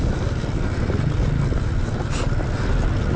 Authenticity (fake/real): real